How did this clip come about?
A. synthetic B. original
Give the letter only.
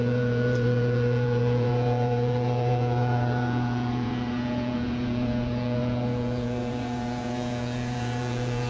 A